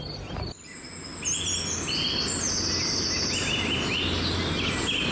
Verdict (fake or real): real